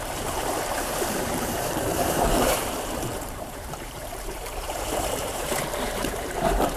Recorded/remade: remade